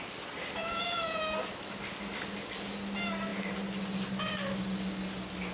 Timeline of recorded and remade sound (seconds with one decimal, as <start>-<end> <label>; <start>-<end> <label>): 0.0-0.6 recorded; 0.6-1.2 remade; 1.2-5.5 recorded